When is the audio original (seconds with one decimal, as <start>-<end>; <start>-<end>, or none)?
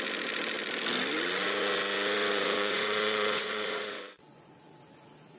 0.0-2.3; 4.6-5.4